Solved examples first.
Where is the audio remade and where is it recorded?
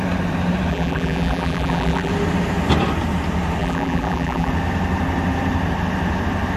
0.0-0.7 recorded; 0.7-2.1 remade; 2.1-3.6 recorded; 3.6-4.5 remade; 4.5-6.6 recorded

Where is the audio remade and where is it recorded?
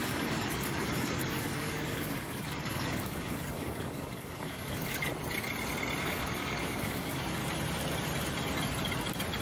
0.0-5.1 remade; 5.1-6.0 recorded; 6.0-7.4 remade; 7.4-9.4 recorded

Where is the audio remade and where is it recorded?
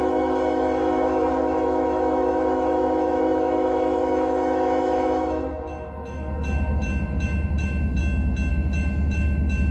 0.0-8.0 remade; 8.0-8.5 recorded; 8.5-9.7 remade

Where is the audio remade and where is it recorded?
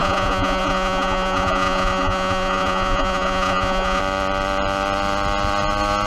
0.0-4.0 remade; 4.0-6.1 recorded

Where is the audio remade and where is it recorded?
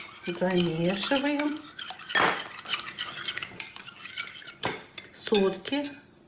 0.0-1.5 recorded; 1.5-2.0 remade; 2.0-2.7 recorded; 2.7-3.6 remade; 3.6-6.3 recorded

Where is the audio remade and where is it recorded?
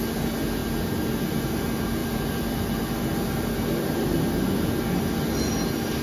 0.0-0.6 recorded; 0.6-1.2 remade; 1.2-2.0 recorded; 2.0-4.2 remade; 4.2-6.0 recorded